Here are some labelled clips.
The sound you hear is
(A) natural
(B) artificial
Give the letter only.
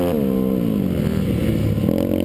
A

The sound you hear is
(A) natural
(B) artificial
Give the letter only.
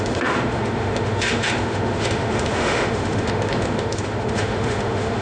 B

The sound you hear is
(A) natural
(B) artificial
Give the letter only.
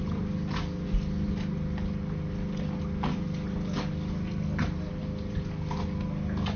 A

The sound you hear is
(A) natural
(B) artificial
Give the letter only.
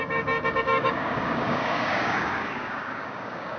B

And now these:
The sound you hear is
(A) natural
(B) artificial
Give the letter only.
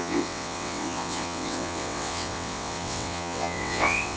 B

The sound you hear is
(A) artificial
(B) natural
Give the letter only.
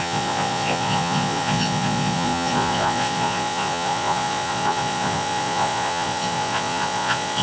A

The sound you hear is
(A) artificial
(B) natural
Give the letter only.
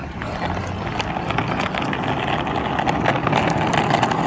B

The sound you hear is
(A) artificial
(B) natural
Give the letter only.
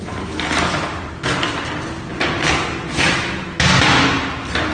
B